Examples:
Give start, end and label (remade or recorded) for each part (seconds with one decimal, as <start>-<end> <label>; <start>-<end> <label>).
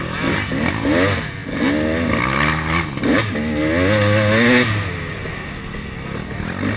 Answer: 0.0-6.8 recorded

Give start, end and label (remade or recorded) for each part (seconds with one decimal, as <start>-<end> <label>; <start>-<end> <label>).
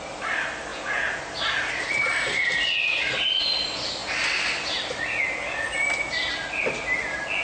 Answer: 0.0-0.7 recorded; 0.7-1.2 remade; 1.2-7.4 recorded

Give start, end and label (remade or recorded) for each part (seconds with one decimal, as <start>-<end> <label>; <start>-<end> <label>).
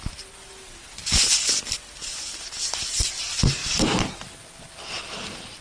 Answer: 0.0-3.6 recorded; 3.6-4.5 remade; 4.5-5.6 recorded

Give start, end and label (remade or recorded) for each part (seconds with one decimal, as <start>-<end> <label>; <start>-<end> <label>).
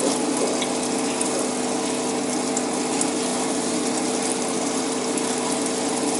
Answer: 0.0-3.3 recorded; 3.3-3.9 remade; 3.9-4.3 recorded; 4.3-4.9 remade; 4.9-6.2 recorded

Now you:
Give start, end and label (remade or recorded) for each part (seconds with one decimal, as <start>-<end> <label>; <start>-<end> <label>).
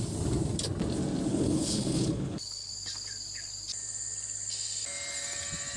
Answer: 0.0-1.3 recorded; 1.3-2.7 remade; 2.7-5.8 recorded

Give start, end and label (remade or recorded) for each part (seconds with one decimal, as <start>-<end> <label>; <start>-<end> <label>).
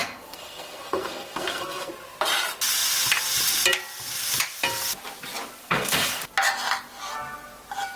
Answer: 0.0-1.9 remade; 1.9-5.6 recorded; 5.6-6.2 remade; 6.2-8.0 recorded